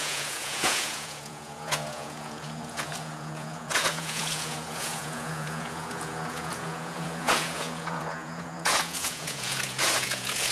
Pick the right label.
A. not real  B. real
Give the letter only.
A